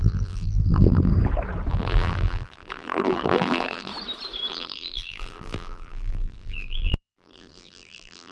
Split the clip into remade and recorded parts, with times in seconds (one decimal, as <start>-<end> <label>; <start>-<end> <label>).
0.0-1.1 remade; 1.1-1.7 recorded; 1.7-3.9 remade; 3.9-4.5 recorded; 4.5-8.3 remade